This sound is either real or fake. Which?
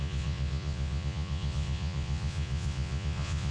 fake